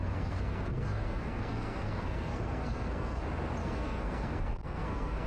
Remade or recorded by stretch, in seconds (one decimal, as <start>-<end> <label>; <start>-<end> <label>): 0.0-3.2 remade; 3.2-3.6 recorded; 3.6-5.3 remade